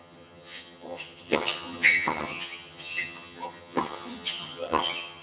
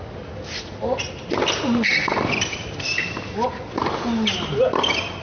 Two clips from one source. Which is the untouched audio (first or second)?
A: second